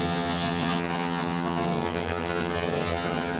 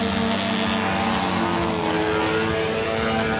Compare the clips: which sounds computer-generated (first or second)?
first